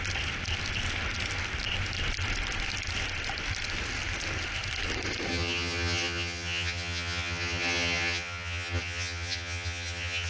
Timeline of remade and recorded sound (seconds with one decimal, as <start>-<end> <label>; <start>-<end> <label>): 0.0-5.3 recorded; 5.3-10.3 remade